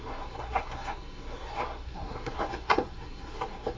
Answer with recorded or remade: remade